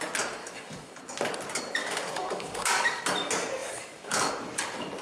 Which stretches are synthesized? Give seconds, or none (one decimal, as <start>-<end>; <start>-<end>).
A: 0.4-1.0; 1.8-3.0; 3.6-4.3